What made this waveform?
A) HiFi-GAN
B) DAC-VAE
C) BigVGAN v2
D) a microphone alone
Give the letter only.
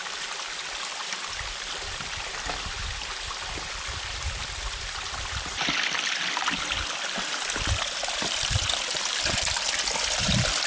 D